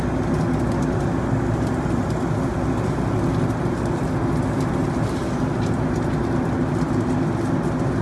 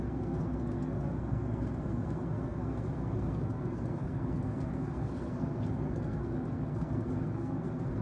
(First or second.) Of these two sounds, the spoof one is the second